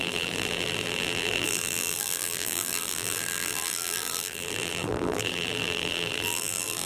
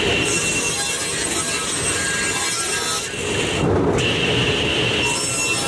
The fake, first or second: first